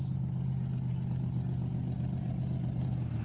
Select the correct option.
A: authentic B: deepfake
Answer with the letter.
A